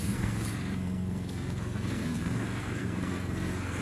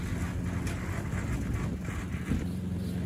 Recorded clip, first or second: second